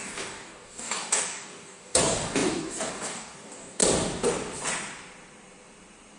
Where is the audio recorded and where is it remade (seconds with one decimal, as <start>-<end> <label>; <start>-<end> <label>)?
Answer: 0.0-3.8 remade; 3.8-6.2 recorded